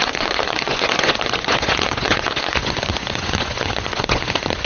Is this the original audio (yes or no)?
no